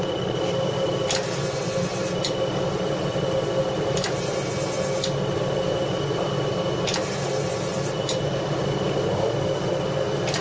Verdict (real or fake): real